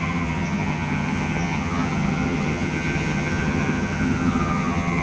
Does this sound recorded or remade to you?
remade